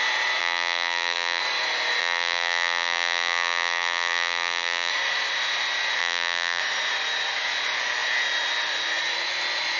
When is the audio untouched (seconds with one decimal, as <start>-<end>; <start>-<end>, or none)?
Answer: 0.0-0.4; 1.4-2.0; 4.9-6.0; 6.6-9.8